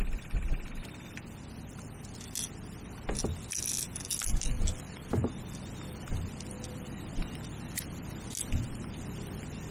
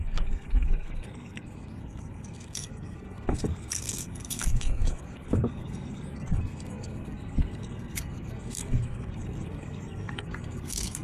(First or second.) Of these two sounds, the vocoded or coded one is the second